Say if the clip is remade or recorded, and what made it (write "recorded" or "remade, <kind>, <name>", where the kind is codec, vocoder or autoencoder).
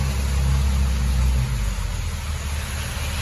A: recorded